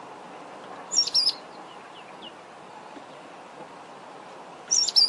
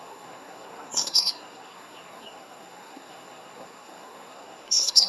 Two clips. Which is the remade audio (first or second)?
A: second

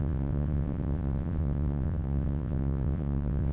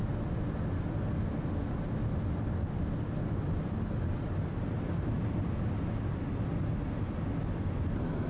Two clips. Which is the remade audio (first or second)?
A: first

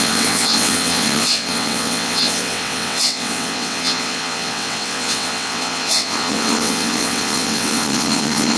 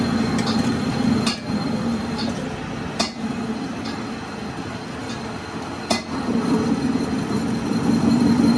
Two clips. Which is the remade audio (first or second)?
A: first